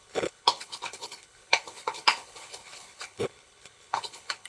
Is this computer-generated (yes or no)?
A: yes